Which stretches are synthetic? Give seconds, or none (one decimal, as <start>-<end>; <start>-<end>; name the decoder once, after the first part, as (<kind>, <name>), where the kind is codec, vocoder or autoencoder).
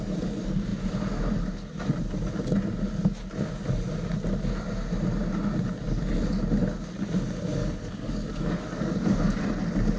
7.6-9.4 (codec, DAC)